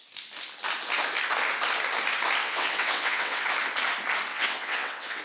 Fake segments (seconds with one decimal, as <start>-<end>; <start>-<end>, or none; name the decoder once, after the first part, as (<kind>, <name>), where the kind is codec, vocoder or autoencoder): 2.4-3.5 (vocoder, WaveNeXt); 4.3-5.2